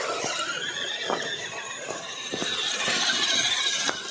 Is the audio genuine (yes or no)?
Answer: yes